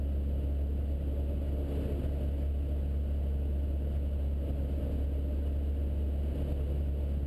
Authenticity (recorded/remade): recorded